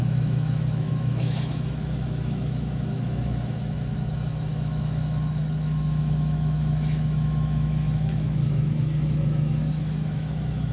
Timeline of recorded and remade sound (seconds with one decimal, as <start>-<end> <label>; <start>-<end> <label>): 0.0-10.7 remade